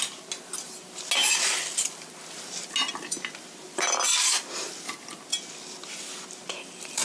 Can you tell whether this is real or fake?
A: real